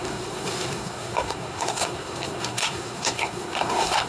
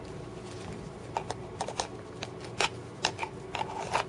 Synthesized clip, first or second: first